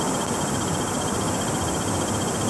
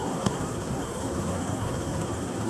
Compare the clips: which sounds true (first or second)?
first